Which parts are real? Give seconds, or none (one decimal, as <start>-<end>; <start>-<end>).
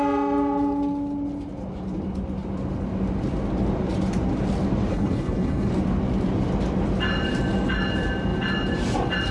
0.0-4.9; 5.7-9.3